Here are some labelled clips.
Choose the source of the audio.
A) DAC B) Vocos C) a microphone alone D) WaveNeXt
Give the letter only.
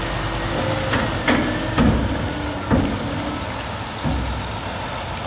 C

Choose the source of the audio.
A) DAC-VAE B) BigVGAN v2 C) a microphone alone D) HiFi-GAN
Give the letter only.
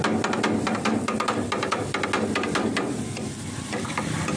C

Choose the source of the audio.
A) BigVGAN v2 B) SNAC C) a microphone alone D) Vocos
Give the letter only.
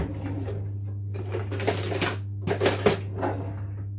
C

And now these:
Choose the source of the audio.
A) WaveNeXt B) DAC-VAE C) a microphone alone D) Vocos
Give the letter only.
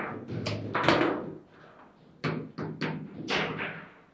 C